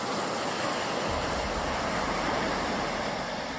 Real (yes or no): yes